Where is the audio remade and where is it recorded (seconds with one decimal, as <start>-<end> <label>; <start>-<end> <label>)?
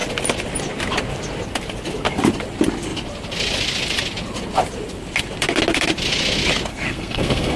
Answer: 0.0-6.7 recorded; 6.7-7.6 remade